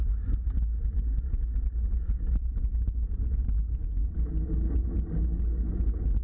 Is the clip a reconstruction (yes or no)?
no